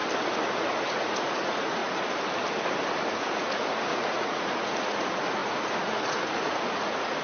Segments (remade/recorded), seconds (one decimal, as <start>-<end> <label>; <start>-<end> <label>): 0.0-0.5 recorded; 0.5-1.8 remade; 1.8-3.0 recorded; 3.0-7.2 remade